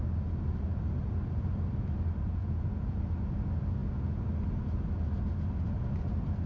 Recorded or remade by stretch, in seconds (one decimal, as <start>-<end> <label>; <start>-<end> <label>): 0.0-2.4 recorded; 2.4-3.0 remade; 3.0-6.5 recorded